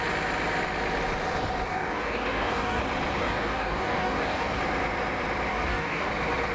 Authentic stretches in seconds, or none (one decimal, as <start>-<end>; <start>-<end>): 0.0-1.7; 2.8-3.2; 4.6-5.5; 6.1-6.5